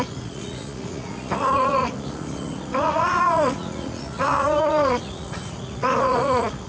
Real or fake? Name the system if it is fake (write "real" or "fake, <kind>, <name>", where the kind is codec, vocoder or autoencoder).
fake, vocoder, Vocos